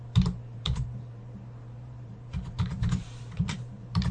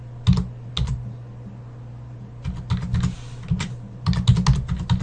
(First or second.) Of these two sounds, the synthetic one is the first